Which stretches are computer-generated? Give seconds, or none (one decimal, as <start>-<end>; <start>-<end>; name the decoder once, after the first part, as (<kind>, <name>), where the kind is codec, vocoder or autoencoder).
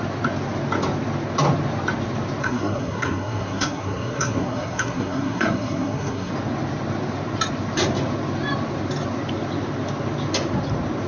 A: 2.4-6.3 (codec, SNAC)